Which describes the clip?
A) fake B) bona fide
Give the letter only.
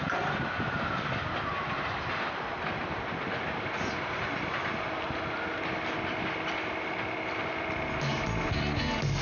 B